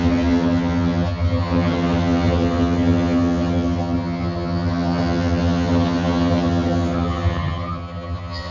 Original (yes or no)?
no